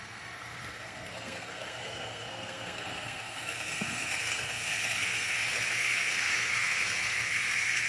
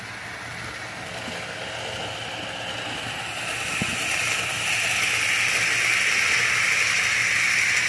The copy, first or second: first